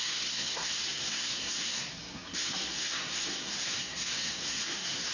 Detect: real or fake fake